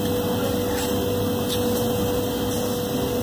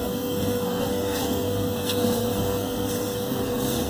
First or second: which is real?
first